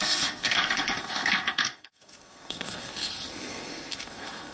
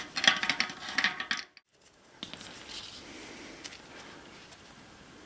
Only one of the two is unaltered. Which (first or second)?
second